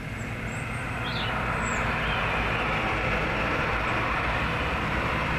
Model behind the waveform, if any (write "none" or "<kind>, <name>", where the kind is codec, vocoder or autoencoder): none